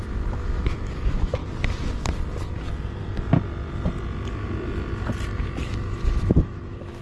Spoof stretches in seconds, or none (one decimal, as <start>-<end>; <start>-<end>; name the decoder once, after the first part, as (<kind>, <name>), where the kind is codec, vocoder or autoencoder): 0.0-1.4 (autoencoder, DAC-VAE); 5.6-7.0

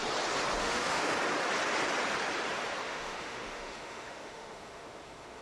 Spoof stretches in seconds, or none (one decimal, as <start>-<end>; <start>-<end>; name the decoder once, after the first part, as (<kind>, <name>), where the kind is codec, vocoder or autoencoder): 0.6-1.1 (autoencoder, DAC-VAE); 2.8-5.4

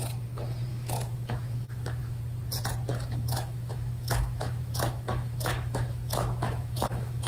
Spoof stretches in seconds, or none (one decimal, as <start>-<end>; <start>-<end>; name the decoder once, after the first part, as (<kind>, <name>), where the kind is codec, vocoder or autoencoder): 0.7-2.2 (autoencoder, DAC-VAE); 2.9-7.3

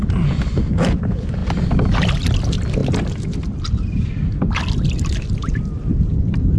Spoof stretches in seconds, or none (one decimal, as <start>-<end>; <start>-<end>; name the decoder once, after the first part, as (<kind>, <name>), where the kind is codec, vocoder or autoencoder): none